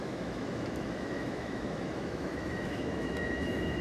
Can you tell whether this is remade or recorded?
remade